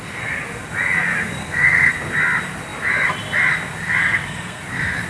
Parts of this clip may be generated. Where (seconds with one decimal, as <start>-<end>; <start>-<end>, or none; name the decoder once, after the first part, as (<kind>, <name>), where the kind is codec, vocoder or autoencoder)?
1.4-1.9 (codec, SNAC); 4.0-4.6